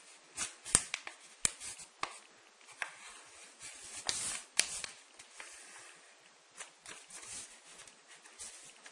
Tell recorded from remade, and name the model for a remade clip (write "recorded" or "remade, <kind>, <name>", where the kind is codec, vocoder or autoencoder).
recorded